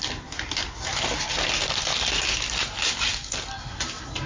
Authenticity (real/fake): real